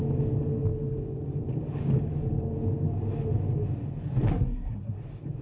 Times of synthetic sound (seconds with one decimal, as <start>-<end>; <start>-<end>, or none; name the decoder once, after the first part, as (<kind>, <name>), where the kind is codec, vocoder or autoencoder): 4.3-5.0 (codec, SNAC)